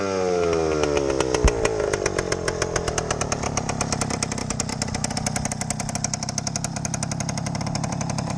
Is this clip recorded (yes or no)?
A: yes